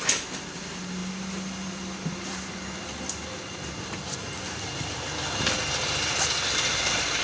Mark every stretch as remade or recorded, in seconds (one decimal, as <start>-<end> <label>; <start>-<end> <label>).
0.0-7.2 recorded